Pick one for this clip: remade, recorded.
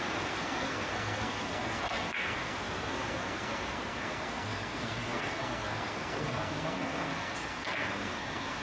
remade